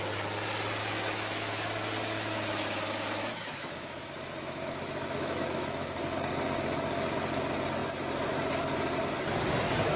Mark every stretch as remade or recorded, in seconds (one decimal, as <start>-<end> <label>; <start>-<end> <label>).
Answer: 0.0-0.8 recorded; 0.8-6.0 remade; 6.0-10.0 recorded